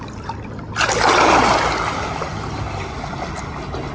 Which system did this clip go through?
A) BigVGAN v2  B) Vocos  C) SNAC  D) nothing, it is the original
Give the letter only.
D